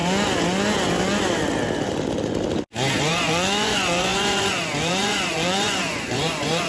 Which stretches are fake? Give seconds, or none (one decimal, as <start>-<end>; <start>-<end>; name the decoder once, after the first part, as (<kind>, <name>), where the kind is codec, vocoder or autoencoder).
3.0-6.7 (vocoder, Vocos)